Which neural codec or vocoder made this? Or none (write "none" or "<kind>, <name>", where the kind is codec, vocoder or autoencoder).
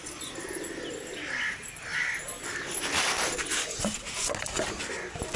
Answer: none